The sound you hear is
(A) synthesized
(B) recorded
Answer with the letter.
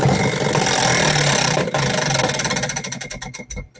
B